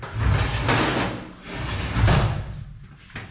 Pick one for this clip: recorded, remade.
recorded